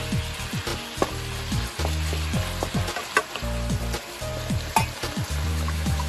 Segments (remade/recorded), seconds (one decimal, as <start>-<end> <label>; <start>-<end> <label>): 0.0-5.5 recorded; 5.5-6.1 remade